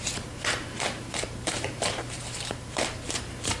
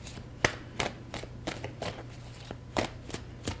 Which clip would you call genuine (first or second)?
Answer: second